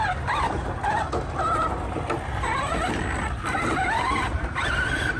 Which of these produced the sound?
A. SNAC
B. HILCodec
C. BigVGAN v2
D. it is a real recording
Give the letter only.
D